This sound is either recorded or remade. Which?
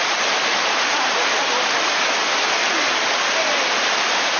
recorded